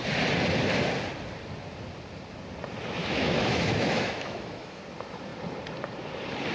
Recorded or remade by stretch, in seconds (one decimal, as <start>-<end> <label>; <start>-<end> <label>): 0.0-3.0 recorded; 3.0-4.8 remade; 4.8-6.5 recorded